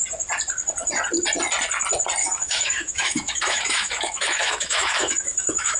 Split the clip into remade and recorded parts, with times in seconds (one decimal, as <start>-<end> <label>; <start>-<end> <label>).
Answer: 0.0-2.2 recorded; 2.2-5.8 remade